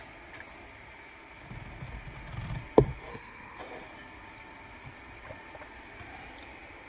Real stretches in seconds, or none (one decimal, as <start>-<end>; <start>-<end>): 0.0-3.1; 3.6-6.9